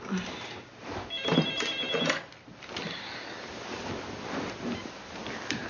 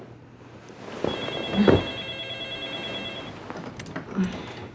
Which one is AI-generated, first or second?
first